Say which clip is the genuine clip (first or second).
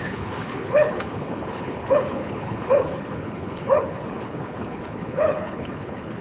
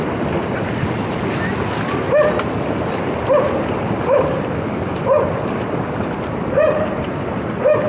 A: second